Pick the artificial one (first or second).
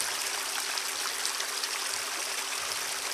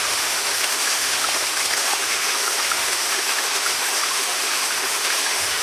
second